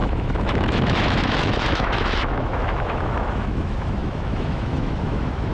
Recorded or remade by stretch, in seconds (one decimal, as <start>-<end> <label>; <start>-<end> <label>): 0.0-5.5 remade

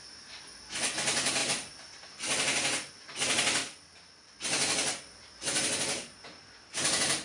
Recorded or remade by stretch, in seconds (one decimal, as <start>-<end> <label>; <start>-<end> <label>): 0.0-1.4 recorded; 1.4-2.9 remade; 2.9-3.6 recorded; 3.6-4.4 remade; 4.4-7.2 recorded